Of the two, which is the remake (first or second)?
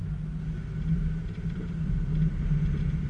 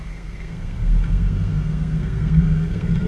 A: second